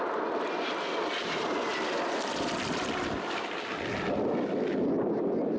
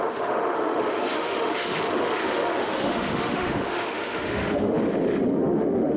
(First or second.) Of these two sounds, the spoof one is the second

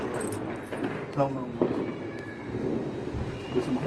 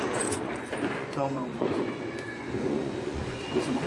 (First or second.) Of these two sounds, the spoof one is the second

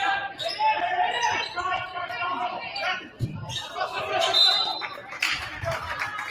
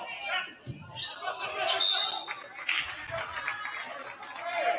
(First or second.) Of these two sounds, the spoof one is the first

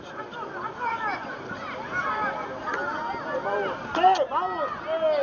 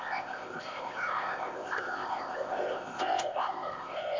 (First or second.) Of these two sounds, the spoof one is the second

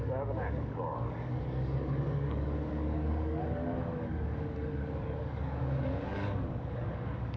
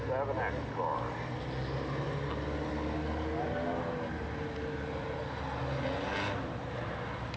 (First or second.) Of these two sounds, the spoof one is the first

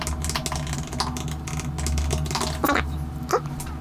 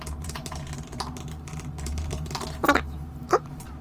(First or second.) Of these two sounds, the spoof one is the second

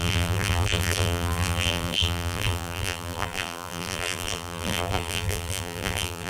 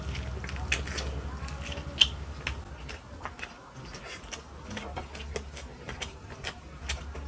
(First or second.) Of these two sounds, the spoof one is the first